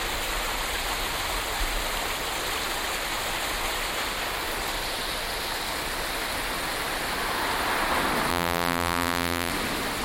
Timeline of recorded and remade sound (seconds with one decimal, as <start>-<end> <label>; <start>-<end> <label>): 0.0-8.3 recorded; 8.3-9.5 remade; 9.5-10.0 recorded